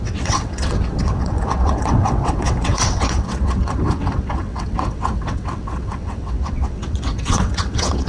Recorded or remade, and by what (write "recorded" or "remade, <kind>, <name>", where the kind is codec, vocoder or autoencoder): remade, vocoder, WaveNeXt